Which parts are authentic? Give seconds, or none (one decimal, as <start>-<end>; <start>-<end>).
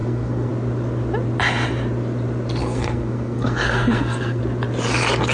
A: 0.5-2.6; 4.4-5.3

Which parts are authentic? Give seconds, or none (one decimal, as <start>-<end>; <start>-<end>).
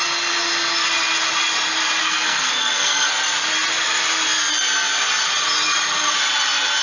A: 0.0-2.0; 3.1-6.8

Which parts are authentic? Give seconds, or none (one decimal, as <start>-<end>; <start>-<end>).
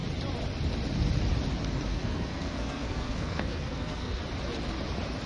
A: 0.0-1.9; 4.2-5.3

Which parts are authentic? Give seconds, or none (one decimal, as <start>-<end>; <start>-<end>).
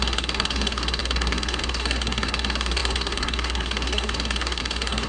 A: none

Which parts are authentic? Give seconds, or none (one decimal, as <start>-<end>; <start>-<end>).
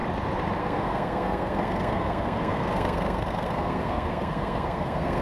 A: 0.0-0.6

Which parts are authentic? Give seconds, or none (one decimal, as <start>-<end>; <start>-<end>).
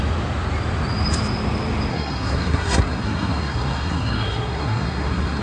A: 0.0-1.9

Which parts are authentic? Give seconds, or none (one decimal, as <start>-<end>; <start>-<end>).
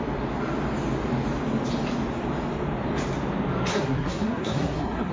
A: 0.0-3.7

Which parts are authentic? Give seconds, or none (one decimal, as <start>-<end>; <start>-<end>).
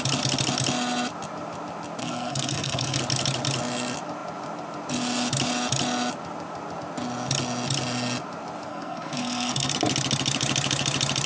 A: 0.0-2.0; 3.0-8.7; 9.7-11.3